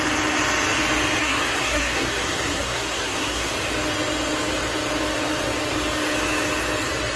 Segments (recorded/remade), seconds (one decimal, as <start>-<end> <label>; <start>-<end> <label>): 0.0-1.2 recorded; 1.2-3.5 remade; 3.5-7.2 recorded

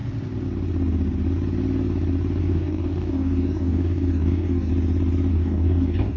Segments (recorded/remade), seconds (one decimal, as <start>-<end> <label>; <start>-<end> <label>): 0.0-2.4 recorded; 2.4-4.7 remade; 4.7-5.3 recorded; 5.3-6.2 remade

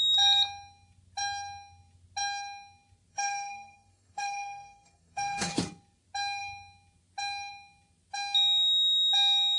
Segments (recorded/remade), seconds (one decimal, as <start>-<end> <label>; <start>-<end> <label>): 0.0-3.1 recorded; 3.1-5.5 remade; 5.5-9.6 recorded

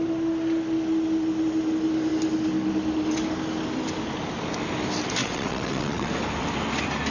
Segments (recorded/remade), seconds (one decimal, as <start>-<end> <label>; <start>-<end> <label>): 0.0-5.2 recorded; 5.2-6.1 remade; 6.1-7.1 recorded

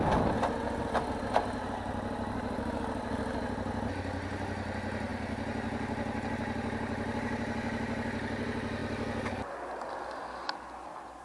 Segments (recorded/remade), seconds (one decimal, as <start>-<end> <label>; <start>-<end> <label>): 0.0-11.2 recorded

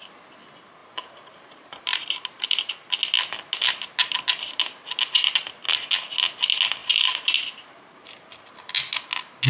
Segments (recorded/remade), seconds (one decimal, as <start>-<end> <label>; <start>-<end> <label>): 0.0-0.8 recorded; 0.8-2.7 remade; 2.7-6.8 recorded; 6.8-8.4 remade; 8.4-9.5 recorded